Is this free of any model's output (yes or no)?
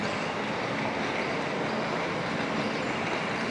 yes